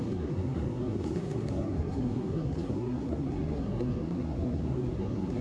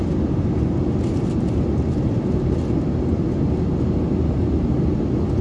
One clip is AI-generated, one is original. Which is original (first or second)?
second